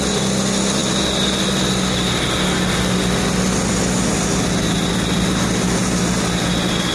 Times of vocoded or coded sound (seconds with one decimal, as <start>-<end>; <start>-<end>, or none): none